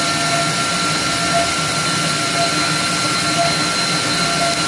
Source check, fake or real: real